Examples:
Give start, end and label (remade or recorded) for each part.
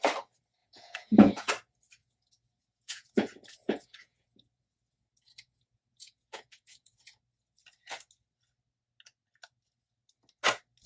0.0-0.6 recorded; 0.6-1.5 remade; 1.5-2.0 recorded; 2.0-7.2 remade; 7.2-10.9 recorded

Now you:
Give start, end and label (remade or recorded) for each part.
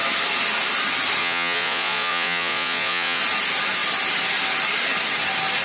0.0-1.2 recorded; 1.2-3.2 remade; 3.2-5.6 recorded